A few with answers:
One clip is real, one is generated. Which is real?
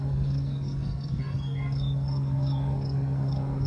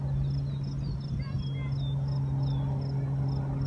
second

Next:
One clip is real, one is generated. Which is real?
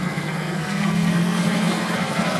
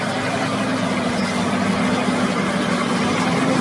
second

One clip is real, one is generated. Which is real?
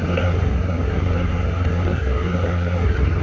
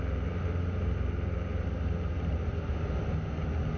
second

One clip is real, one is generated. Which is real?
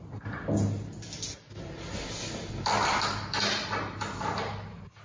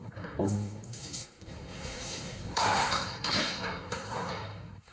first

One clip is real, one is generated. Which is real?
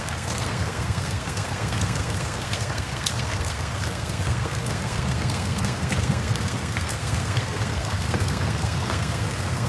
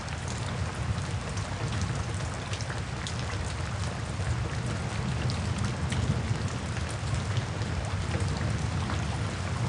second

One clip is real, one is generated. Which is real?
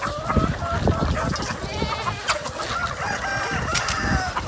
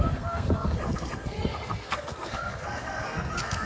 first